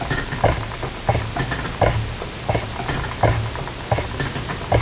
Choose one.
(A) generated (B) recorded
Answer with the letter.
B